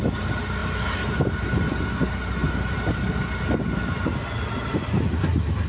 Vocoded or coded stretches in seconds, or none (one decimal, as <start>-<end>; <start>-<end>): none